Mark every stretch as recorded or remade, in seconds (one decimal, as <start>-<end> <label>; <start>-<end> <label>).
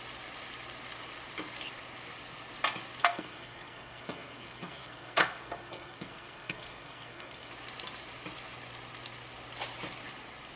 0.0-3.0 recorded; 3.0-7.5 remade; 7.5-10.6 recorded